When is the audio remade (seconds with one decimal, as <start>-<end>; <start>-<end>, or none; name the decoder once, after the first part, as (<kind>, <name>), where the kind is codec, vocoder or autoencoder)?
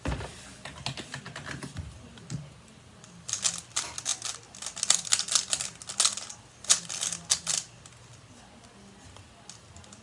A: none